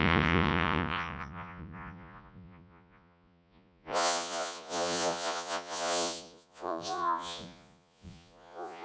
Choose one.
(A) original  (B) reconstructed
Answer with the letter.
B